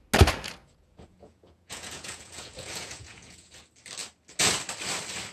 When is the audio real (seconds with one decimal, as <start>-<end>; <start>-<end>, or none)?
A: 0.0-0.6; 3.6-5.3